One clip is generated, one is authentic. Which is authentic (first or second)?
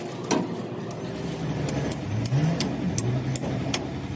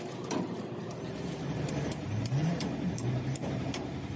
first